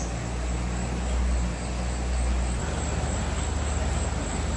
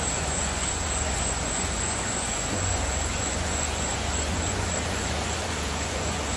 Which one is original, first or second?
first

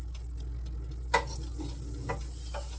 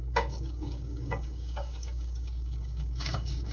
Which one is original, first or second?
first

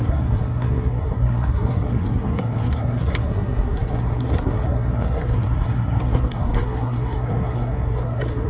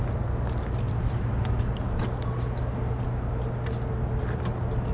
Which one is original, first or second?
second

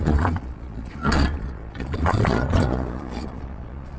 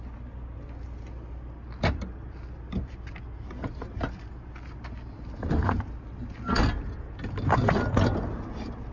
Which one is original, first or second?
second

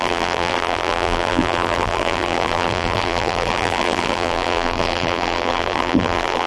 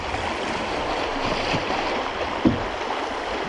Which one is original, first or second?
second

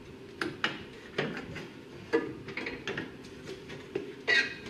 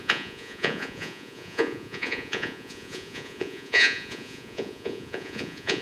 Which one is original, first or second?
first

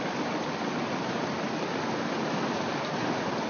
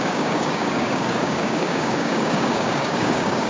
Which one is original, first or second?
first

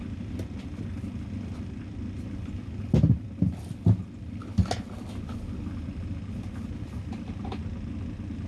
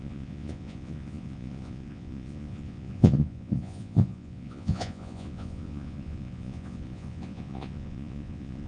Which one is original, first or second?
first